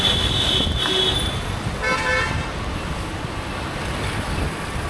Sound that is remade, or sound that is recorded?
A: recorded